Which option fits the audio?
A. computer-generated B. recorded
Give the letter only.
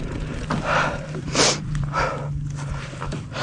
A